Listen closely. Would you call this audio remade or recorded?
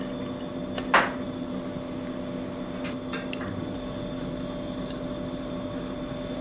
recorded